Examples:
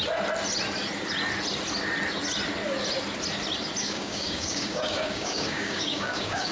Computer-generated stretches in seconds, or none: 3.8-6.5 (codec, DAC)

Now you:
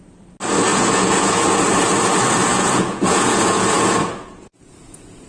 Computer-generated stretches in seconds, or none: 0.7-1.6 (vocoder, Vocos); 2.4-5.3

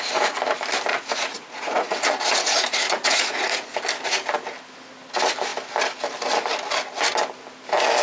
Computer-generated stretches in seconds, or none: 0.9-3.7 (vocoder, Vocos)

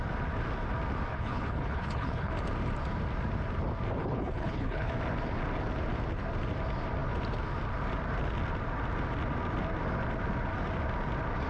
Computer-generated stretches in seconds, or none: 1.1-2.3 (codec, HILCodec); 4.0-4.9

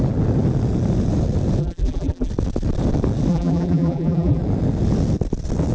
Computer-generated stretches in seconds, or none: 1.6-2.3 (vocoder, BigVGAN v2); 3.3-4.4